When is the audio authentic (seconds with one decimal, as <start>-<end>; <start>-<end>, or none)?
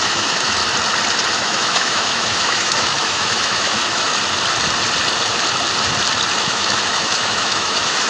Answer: 0.6-1.3; 4.1-6.4